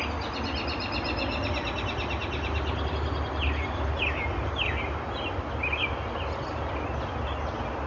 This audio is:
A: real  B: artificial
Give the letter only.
A